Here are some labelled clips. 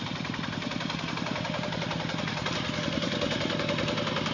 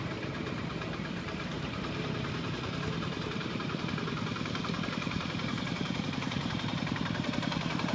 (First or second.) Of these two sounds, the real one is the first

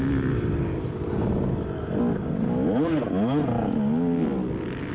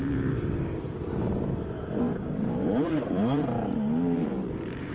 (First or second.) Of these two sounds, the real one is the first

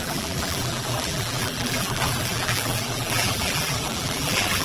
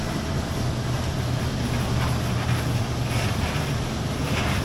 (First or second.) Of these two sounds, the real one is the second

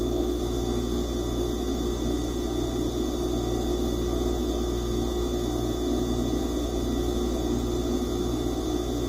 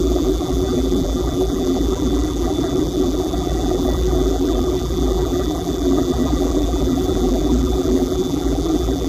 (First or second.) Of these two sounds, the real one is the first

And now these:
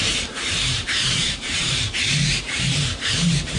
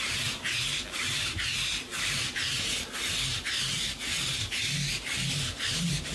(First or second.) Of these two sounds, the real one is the second